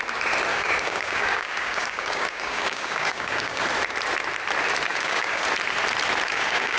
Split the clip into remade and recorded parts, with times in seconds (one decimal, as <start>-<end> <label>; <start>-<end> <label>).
0.0-0.5 recorded; 0.5-3.6 remade; 3.6-4.9 recorded; 4.9-5.4 remade; 5.4-6.3 recorded; 6.3-6.8 remade